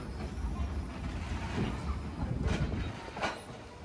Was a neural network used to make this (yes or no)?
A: no